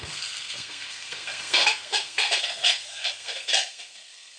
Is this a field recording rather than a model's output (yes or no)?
no